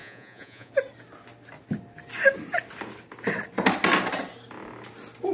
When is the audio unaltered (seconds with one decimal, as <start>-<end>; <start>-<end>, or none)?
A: 0.7-5.3